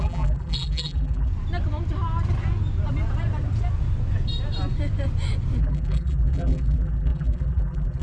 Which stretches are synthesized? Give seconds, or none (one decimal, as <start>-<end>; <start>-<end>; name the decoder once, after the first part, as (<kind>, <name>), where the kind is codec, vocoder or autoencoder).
0.0-1.3 (vocoder, BigVGAN v2); 5.6-8.0